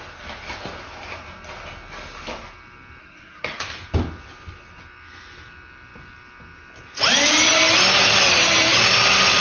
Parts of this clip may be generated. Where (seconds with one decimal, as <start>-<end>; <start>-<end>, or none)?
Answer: 3.0-3.6